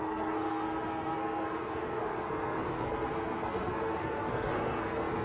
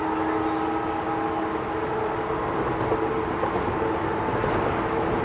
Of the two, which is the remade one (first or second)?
first